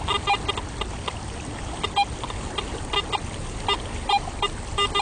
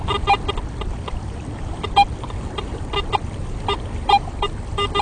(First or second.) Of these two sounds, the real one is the first